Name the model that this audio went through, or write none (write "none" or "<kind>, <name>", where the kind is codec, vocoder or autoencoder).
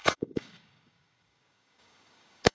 codec, DAC